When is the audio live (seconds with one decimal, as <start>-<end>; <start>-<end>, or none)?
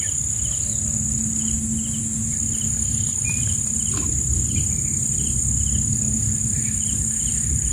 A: 0.0-7.7